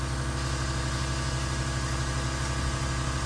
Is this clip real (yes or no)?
yes